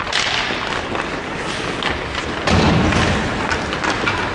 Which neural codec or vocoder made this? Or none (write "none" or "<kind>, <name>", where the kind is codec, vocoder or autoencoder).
none